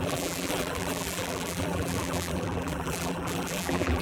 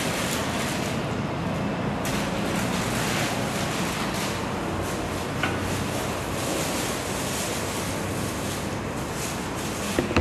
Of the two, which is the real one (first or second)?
second